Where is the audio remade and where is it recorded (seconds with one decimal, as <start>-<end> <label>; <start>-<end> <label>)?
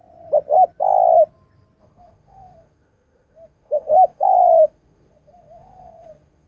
0.0-1.8 recorded; 1.8-6.5 remade